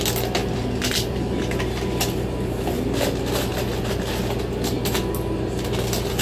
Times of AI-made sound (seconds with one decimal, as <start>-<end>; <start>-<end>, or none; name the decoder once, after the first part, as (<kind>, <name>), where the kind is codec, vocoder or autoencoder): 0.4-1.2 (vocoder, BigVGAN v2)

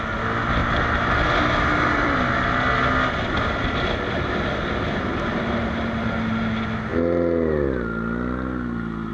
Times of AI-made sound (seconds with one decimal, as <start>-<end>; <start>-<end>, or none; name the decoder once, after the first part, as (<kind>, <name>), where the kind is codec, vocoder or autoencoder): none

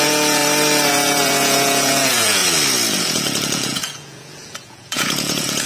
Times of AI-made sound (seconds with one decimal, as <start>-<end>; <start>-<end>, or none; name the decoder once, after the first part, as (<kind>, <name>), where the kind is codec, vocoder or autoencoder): 0.0-0.4 (vocoder, Vocos); 0.9-2.4; 3.0-5.7

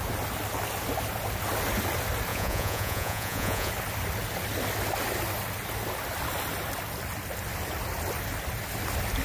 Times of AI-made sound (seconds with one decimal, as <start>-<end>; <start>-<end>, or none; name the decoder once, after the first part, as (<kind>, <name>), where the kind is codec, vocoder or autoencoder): 2.3-3.7 (vocoder, Vocos)

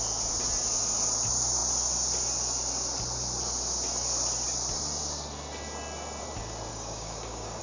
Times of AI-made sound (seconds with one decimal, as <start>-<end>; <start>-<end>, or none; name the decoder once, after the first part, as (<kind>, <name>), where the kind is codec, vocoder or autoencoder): 6.7-7.6 (codec, DAC)

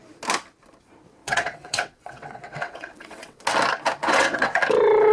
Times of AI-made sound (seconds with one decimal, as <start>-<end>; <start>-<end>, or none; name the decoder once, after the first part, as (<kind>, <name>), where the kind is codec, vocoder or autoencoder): 1.2-3.4 (vocoder, WaveNeXt); 4.0-4.6

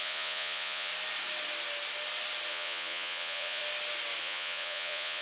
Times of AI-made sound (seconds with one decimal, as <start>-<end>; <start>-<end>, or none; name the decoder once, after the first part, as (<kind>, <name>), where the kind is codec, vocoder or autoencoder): 0.0-0.9 (vocoder, Vocos); 2.5-3.6; 4.2-5.2